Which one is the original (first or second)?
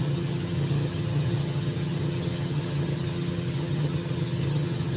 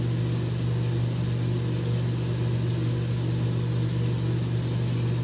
second